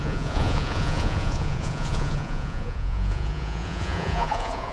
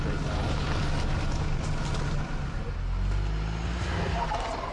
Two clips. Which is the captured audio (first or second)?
second